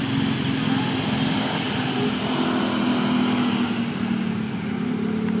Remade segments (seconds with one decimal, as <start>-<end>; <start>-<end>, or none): none